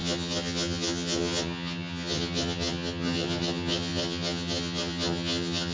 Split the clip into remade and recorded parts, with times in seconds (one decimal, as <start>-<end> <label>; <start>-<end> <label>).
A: 0.0-5.7 remade